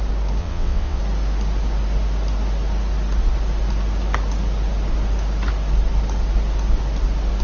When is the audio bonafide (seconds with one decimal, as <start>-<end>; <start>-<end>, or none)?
0.0-0.4; 1.0-7.4